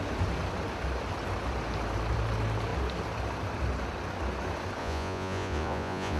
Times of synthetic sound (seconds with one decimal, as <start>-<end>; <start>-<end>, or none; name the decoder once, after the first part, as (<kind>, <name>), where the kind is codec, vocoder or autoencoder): 4.8-6.2 (vocoder, Vocos)